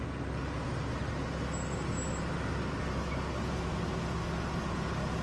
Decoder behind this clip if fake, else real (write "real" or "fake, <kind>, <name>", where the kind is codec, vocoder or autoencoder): real